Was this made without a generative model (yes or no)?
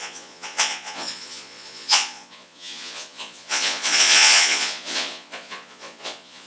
no